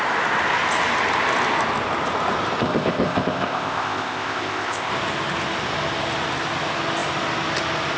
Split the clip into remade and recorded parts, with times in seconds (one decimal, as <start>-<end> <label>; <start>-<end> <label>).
0.0-2.6 recorded; 2.6-4.9 remade; 4.9-8.0 recorded